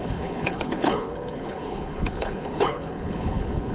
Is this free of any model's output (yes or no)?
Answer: no